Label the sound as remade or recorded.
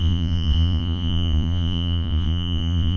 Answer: remade